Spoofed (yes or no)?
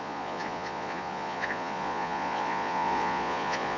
yes